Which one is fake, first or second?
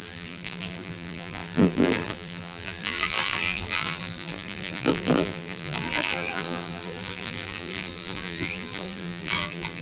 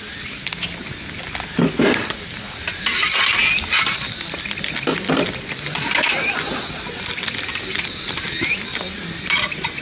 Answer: first